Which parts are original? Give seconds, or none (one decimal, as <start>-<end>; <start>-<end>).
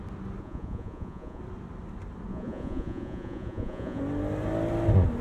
0.0-0.4; 1.4-2.3; 4.0-5.2